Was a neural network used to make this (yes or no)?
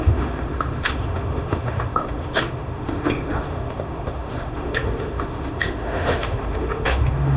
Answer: yes